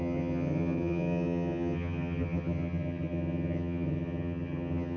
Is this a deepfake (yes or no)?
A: yes